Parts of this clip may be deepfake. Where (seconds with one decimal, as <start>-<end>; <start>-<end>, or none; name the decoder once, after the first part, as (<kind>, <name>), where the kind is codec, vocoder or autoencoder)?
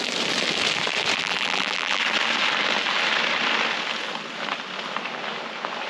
1.2-2.0 (vocoder, BigVGAN v2)